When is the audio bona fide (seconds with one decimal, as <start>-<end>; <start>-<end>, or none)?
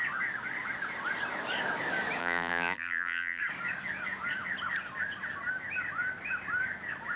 0.0-2.2; 3.4-7.2